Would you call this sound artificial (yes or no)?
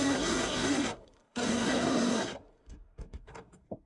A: yes